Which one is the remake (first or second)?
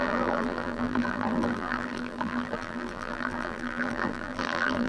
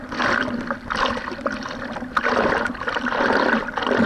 first